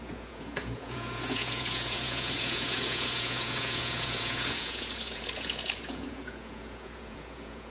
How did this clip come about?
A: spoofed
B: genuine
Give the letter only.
A